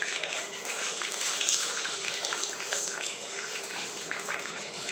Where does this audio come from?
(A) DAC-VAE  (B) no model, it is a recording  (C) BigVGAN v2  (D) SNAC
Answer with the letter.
A